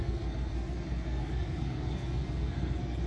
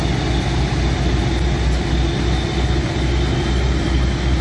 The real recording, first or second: second